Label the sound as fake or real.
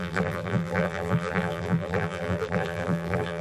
fake